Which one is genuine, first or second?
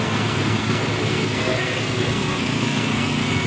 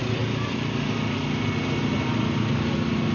second